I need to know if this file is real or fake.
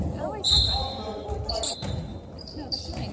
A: real